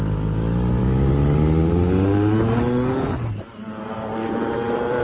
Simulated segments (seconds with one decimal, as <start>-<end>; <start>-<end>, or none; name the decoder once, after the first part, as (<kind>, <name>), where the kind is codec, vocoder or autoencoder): none